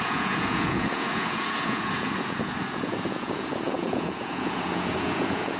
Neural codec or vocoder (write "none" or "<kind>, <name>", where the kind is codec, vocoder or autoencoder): vocoder, Vocos